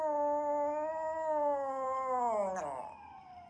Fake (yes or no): no